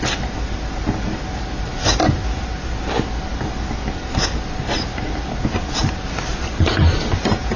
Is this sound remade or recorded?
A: recorded